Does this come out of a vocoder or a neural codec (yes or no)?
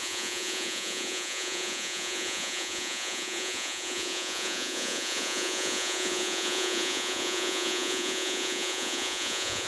yes